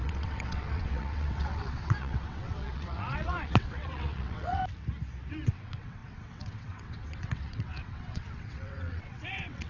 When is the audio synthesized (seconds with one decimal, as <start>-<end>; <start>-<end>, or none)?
0.0-4.6; 5.3-9.7